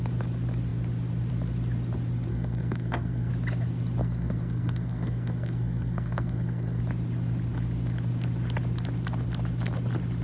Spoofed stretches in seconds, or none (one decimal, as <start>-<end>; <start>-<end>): 2.3-3.3; 4.0-6.8